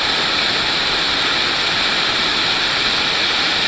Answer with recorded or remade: recorded